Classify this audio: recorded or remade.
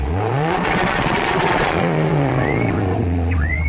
remade